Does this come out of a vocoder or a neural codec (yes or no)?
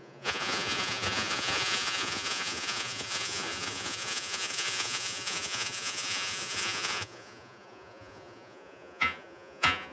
yes